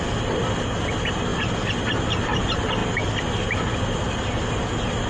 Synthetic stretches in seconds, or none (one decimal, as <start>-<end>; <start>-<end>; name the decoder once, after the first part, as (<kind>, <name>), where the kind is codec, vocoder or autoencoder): none